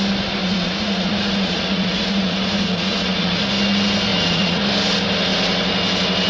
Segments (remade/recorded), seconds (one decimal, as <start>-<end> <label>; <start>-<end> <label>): 0.0-0.4 recorded; 0.4-3.4 remade; 3.4-4.1 recorded; 4.1-4.6 remade; 4.6-6.3 recorded